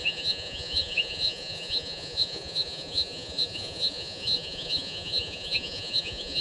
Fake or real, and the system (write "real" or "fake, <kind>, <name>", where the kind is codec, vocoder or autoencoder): fake, vocoder, Vocos